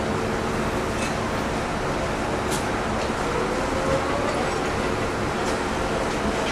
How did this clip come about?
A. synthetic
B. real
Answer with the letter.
B